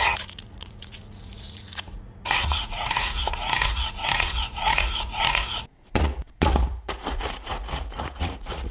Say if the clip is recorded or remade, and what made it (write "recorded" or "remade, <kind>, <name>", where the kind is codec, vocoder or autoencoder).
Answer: remade, vocoder, Vocos